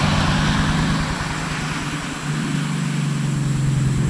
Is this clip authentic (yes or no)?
yes